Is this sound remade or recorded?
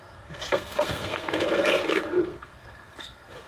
remade